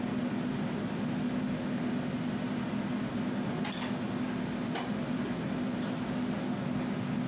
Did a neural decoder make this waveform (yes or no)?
no